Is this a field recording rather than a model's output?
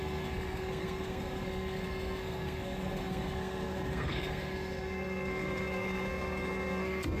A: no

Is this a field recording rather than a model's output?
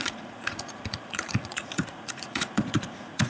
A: no